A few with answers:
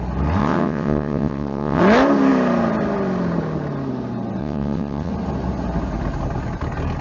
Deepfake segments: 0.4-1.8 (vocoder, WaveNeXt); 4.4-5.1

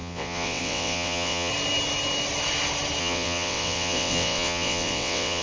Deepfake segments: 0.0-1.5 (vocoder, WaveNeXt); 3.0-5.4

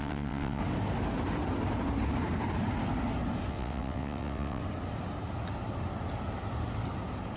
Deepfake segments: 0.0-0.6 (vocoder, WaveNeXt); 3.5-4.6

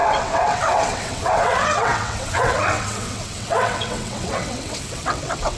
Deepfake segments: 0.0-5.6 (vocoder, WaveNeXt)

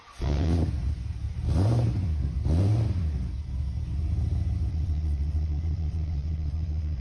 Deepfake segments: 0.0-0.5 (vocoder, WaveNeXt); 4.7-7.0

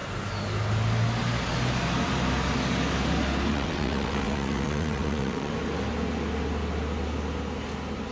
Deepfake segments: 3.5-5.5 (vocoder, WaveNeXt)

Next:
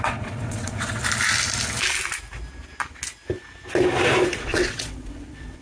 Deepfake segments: 0.0-1.0 (vocoder, WaveNeXt); 4.4-5.6